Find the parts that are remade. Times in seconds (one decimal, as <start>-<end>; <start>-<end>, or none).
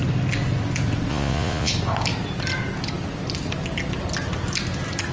1.1-1.7